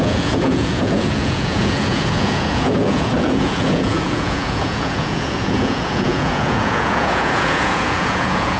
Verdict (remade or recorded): remade